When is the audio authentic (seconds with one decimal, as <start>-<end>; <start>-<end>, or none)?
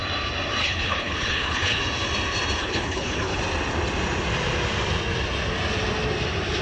0.0-0.6; 1.8-2.6; 3.4-6.6